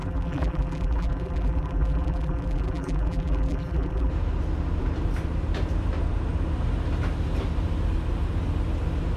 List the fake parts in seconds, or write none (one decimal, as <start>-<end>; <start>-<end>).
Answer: 0.0-4.1